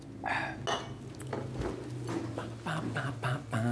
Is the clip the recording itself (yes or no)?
yes